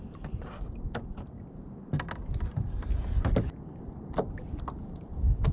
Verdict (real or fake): real